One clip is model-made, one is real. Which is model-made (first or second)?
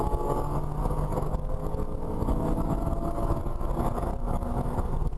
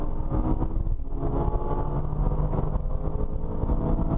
first